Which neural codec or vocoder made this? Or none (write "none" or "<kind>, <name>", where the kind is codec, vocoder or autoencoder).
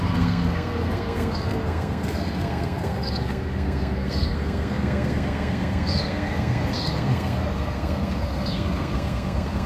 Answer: codec, SNAC